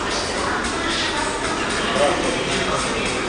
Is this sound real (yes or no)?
yes